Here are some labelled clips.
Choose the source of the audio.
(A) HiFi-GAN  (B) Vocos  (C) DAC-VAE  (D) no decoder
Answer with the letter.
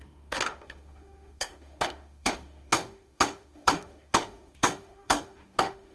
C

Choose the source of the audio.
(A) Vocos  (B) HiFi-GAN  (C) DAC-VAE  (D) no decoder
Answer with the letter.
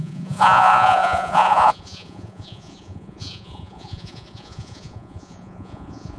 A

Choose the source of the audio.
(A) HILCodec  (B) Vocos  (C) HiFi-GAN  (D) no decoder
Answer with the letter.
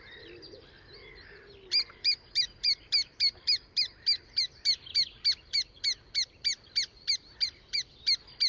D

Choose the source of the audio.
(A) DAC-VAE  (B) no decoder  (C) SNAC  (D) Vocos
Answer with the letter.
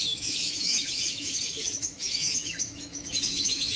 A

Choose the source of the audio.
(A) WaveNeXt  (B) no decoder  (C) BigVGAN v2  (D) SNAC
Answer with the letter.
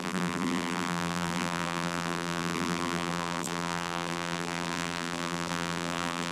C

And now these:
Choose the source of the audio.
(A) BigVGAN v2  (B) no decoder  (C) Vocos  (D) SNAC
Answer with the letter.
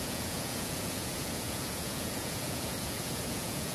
C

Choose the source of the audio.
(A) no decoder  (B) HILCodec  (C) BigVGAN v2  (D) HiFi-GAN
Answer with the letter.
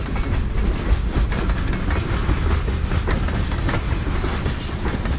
A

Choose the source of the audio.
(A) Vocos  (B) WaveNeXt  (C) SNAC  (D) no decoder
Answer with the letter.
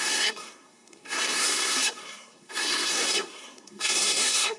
C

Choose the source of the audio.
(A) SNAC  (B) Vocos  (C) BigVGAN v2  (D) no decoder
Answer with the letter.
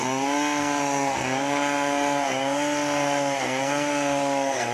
A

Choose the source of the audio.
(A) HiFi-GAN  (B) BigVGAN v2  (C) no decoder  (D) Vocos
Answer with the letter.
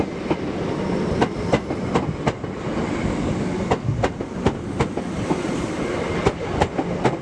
C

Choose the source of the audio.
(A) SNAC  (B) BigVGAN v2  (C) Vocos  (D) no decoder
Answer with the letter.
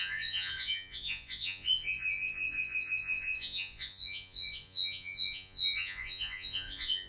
C